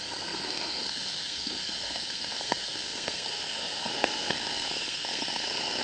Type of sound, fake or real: fake